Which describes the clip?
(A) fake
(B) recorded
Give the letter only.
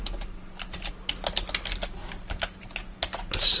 B